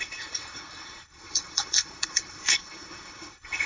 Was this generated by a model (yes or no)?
yes